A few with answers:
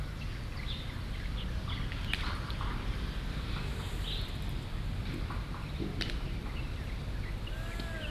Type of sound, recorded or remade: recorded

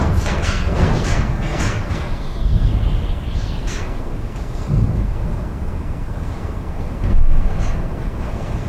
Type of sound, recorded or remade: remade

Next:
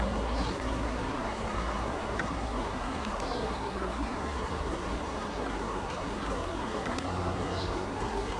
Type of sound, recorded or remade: remade